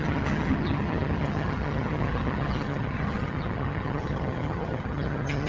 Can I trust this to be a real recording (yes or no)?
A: no